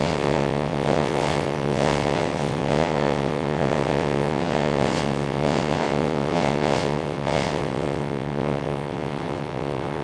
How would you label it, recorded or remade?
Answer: remade